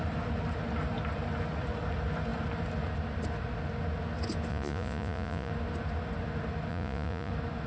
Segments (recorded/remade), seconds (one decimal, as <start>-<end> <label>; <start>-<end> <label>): 0.0-4.5 recorded; 4.5-5.5 remade; 5.5-6.7 recorded; 6.7-7.3 remade; 7.3-7.7 recorded